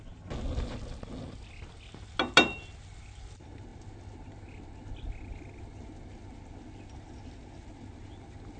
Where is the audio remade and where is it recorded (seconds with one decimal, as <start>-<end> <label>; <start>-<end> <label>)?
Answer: 0.0-8.6 recorded